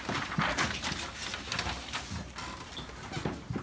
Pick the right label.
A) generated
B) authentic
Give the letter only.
B